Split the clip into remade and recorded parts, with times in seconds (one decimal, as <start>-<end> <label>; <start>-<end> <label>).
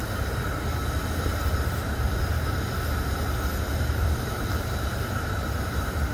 0.0-0.8 remade; 0.8-4.5 recorded; 4.5-6.1 remade